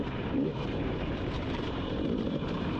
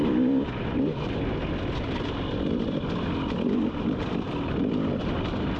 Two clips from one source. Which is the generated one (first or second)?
first